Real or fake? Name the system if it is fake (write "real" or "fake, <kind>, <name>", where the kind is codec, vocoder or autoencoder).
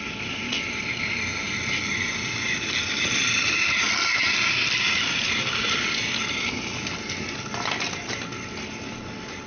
real